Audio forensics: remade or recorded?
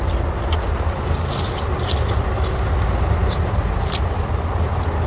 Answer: recorded